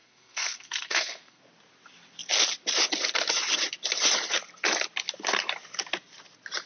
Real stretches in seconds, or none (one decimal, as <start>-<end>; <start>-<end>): 1.4-6.7